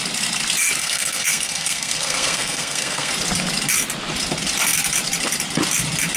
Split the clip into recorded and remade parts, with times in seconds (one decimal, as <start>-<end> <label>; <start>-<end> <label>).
0.0-0.8 recorded; 0.8-3.1 remade; 3.1-6.2 recorded